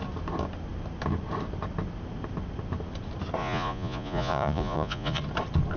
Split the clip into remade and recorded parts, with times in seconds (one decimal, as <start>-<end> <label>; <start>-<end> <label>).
0.0-3.4 recorded; 3.4-5.2 remade; 5.2-5.8 recorded